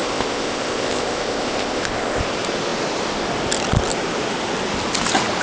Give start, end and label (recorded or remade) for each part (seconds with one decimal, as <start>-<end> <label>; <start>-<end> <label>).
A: 0.0-2.2 remade; 2.2-5.4 recorded